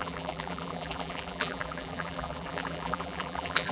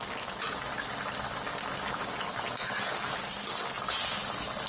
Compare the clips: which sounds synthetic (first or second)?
first